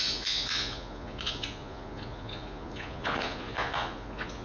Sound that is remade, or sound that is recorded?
remade